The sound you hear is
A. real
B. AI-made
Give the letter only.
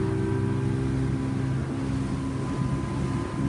A